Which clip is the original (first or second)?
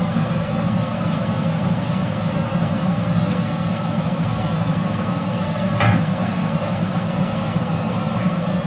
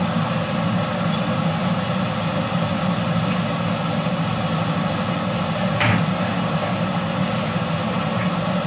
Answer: second